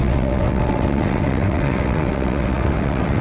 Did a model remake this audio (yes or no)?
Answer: yes